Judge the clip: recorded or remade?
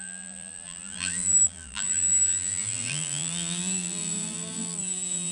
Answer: remade